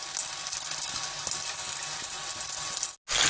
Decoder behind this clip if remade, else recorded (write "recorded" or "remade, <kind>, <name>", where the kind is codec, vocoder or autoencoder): recorded